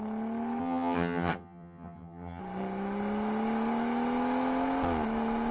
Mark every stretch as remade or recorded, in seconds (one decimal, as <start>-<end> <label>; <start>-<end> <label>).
0.0-0.6 recorded; 0.6-2.4 remade; 2.4-5.5 recorded